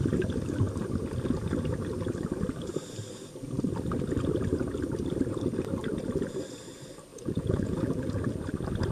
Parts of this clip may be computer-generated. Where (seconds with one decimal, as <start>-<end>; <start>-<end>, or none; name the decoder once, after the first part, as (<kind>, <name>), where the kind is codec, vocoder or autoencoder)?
7.1-8.2 (vocoder, Vocos)